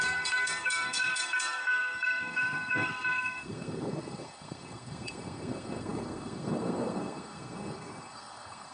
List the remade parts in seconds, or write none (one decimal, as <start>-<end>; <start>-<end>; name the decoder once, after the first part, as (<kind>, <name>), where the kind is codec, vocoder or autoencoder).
0.0-8.7 (codec, SNAC)